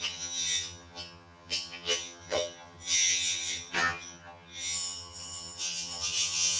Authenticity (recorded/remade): remade